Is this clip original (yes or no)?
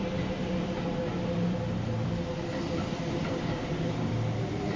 no